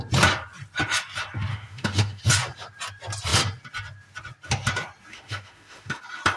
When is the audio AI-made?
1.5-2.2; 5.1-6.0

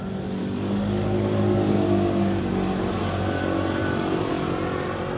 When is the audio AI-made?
0.4-2.4

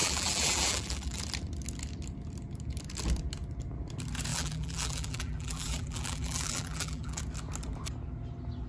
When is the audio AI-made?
0.0-1.2; 4.3-7.2

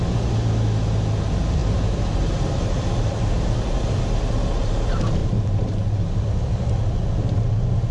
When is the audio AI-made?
1.6-4.0; 5.2-6.8

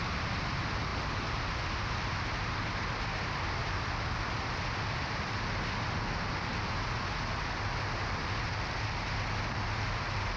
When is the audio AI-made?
none

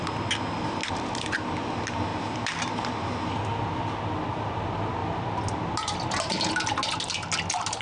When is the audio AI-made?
none

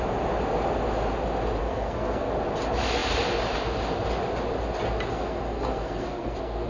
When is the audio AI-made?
1.6-2.3; 5.1-6.7

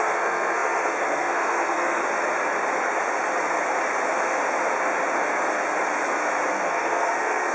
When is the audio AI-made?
0.0-2.0; 6.5-7.5